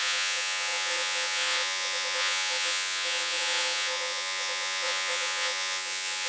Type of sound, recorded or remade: remade